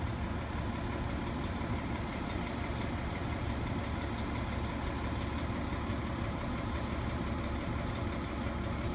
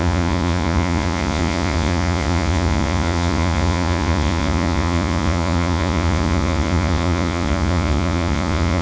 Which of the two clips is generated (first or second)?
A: second